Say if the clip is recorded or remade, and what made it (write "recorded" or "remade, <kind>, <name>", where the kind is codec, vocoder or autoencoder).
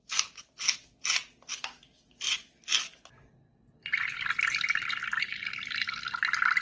recorded